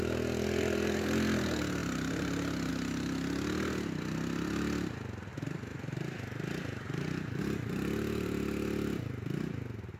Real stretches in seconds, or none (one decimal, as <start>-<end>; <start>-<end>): 0.0-1.8; 2.7-5.7; 7.4-10.0